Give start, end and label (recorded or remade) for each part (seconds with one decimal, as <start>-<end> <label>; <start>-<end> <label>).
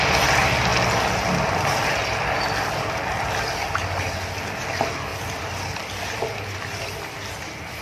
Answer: 0.0-7.8 recorded